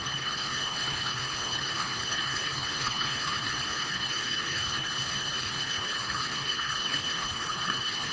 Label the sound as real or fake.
fake